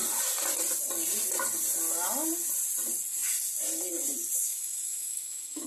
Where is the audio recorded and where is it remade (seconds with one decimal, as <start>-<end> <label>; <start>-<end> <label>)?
0.0-4.4 recorded; 4.4-5.7 remade